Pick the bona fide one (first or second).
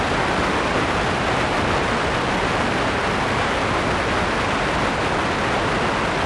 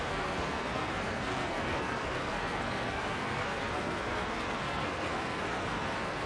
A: first